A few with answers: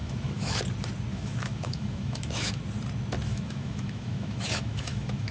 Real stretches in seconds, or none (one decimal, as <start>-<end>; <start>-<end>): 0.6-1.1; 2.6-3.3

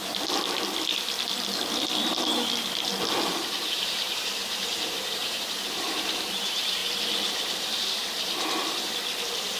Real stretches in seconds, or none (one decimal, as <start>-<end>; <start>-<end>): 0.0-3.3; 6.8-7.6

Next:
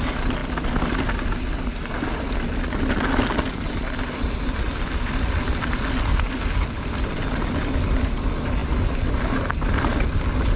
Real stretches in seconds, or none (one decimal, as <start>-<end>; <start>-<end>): 0.0-10.6

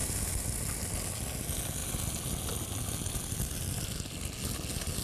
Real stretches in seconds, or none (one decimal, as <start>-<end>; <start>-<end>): 0.0-5.0